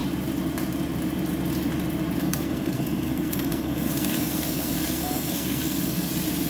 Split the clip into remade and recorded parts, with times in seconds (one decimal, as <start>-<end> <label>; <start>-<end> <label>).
0.0-2.2 recorded; 2.2-6.1 remade; 6.1-6.5 recorded